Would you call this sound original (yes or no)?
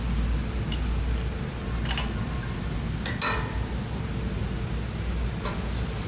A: yes